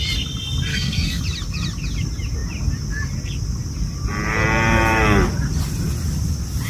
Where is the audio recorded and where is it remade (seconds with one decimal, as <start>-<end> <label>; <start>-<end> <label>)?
0.0-0.7 recorded; 0.7-1.2 remade; 1.2-6.7 recorded